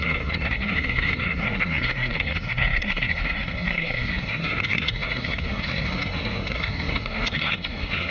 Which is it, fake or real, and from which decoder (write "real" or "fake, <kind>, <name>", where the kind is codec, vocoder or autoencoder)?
fake, codec, SNAC